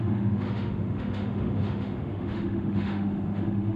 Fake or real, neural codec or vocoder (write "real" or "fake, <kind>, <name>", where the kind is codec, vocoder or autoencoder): fake, autoencoder, DAC-VAE